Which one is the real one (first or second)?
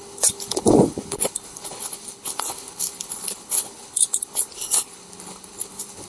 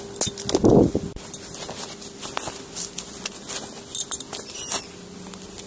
second